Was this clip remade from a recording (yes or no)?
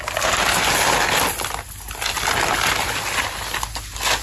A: no